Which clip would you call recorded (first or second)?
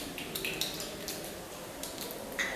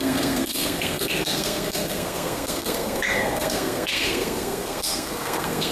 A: first